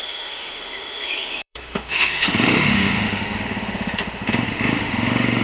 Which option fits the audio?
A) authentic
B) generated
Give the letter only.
B